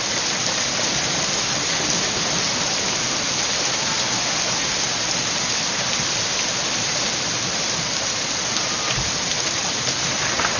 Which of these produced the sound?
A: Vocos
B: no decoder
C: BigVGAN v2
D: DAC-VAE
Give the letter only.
B